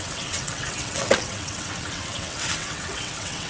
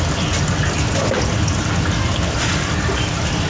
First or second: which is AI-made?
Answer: first